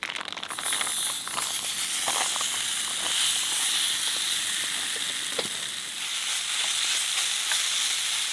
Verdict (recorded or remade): recorded